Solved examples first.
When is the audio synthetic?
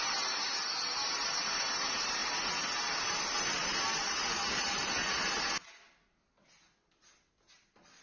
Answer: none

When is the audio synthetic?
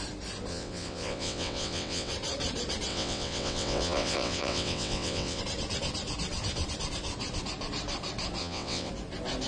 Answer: 0.5-2.1 (vocoder, WaveNeXt); 2.9-5.4; 8.4-8.9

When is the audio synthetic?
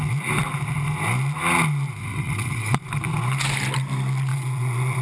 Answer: 2.1-2.8 (vocoder, WaveNeXt); 4.3-5.0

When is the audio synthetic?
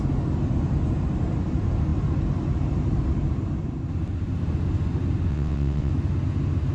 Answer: 5.3-5.9 (vocoder, WaveNeXt)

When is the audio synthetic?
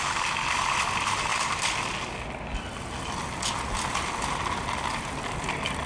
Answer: none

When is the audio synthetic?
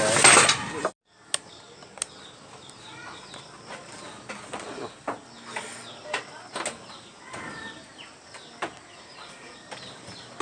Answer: none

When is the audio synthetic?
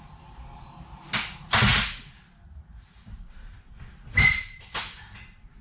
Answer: none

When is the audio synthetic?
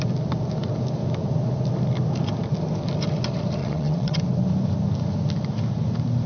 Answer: 3.6-4.2 (vocoder, WaveNeXt)